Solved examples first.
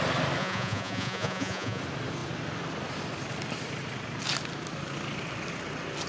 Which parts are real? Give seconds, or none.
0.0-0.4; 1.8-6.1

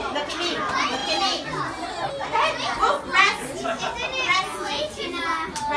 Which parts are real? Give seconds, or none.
0.0-4.5; 5.2-5.8

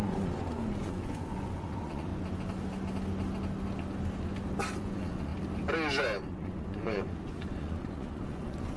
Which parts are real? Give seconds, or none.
2.1-4.7; 5.3-6.2